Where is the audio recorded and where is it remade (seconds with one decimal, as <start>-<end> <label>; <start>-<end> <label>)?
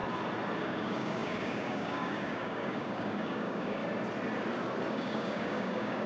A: 0.0-0.6 recorded; 0.6-3.8 remade; 3.8-4.9 recorded; 4.9-6.1 remade